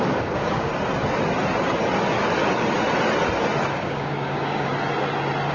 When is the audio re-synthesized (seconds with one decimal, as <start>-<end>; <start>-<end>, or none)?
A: 0.0-0.7; 3.7-4.7